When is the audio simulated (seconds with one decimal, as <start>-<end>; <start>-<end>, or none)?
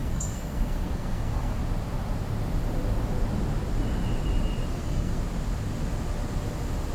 0.0-1.6; 4.7-5.2